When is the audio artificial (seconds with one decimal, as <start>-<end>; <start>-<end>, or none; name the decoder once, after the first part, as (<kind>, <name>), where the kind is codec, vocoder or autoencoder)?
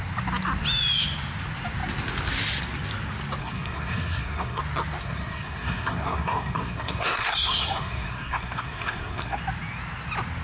3.4-4.6 (codec, SNAC); 5.0-9.4